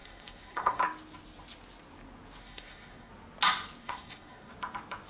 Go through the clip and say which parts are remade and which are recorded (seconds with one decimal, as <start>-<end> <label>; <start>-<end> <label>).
0.0-0.8 remade; 0.8-2.4 recorded; 2.4-3.1 remade; 3.1-3.8 recorded; 3.8-4.5 remade; 4.5-5.1 recorded